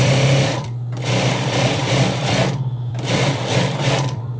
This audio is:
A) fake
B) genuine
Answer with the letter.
A